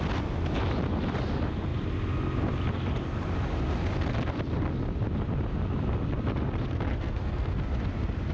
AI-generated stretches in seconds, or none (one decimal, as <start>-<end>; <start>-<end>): 6.9-7.6

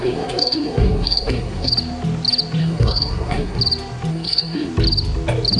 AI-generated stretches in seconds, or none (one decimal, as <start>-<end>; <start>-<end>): 0.0-1.7; 2.6-3.6; 4.1-4.7

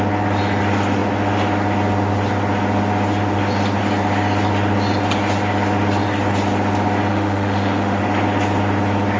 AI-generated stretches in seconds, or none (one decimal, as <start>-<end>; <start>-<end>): 7.1-8.0